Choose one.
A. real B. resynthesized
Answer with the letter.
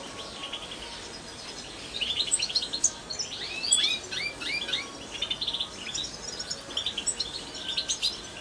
A